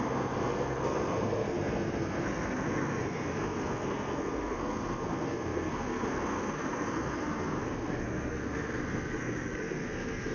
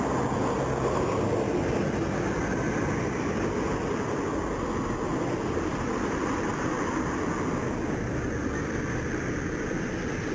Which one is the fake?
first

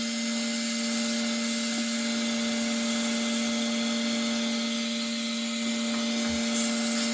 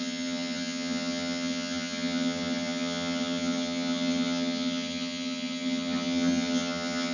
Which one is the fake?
second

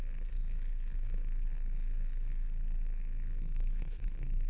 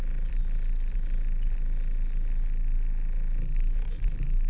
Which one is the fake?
first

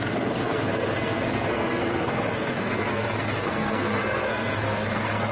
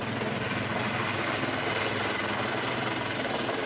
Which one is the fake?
first